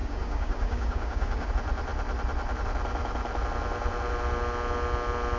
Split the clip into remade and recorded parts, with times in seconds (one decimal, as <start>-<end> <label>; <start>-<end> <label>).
0.0-1.5 remade; 1.5-5.4 recorded